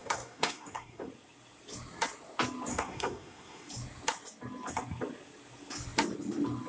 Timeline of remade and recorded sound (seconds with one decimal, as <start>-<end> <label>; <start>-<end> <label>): 0.0-1.1 remade; 1.1-2.7 recorded; 2.7-3.7 remade; 3.7-6.7 recorded